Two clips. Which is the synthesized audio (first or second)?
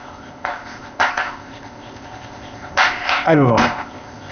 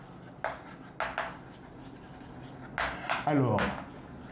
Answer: first